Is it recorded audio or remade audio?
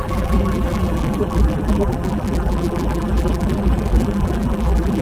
remade